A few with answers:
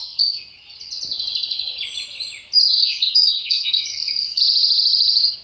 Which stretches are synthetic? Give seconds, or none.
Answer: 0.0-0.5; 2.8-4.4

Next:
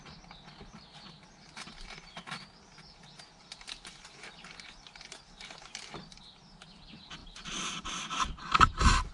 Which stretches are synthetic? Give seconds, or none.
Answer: none

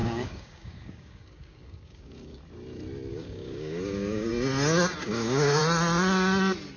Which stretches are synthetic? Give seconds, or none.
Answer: 0.0-2.4; 3.1-4.3; 5.0-5.6

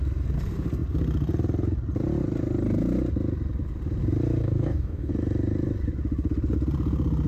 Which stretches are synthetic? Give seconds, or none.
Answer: 4.4-5.1